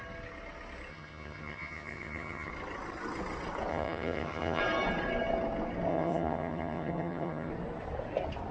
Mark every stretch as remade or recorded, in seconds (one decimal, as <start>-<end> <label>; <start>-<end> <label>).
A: 0.0-0.9 recorded; 0.9-2.5 remade; 2.5-3.7 recorded; 3.7-4.6 remade; 4.6-5.9 recorded; 5.9-7.5 remade; 7.5-8.5 recorded